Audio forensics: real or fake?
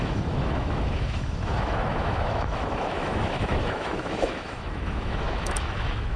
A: fake